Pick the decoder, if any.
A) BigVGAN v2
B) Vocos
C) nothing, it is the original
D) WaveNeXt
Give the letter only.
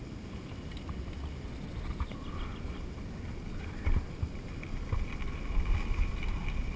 C